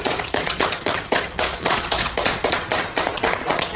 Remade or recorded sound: remade